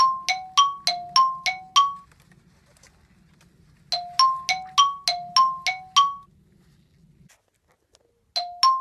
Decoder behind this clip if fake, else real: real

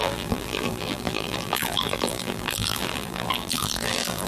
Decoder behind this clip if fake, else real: fake, vocoder, BigVGAN v2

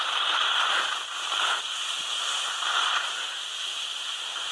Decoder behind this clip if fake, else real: real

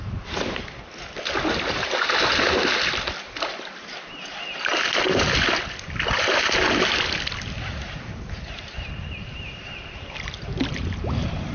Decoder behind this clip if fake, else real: real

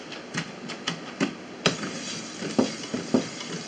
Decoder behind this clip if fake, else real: real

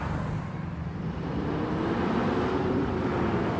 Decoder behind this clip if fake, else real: fake, vocoder, BigVGAN v2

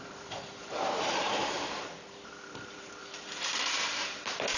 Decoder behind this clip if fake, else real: fake, vocoder, BigVGAN v2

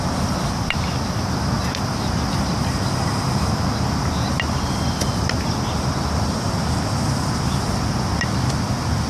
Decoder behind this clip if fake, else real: real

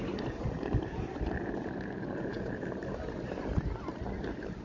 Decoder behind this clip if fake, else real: fake, vocoder, BigVGAN v2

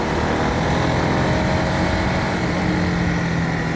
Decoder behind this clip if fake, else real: real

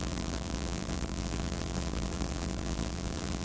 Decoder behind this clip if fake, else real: fake, vocoder, BigVGAN v2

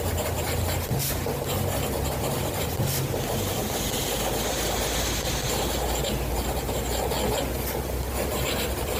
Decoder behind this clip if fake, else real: real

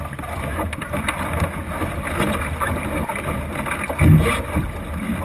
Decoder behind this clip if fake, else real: real